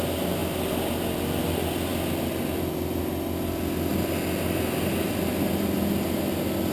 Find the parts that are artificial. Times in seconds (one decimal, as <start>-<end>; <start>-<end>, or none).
none